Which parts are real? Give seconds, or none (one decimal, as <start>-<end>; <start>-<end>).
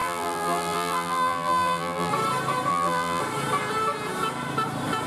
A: 2.1-2.7; 3.2-5.1